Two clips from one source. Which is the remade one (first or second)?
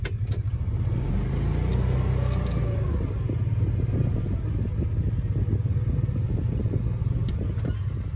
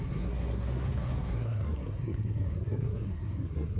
second